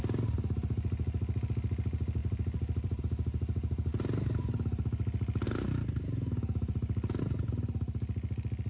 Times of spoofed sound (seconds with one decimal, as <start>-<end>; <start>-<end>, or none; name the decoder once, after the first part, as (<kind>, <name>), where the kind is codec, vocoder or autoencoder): 2.2-3.0 (vocoder, BigVGAN v2)